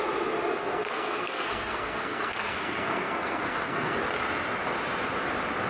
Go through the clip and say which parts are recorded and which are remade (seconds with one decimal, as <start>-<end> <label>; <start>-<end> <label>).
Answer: 0.0-0.6 recorded; 0.6-4.0 remade; 4.0-5.7 recorded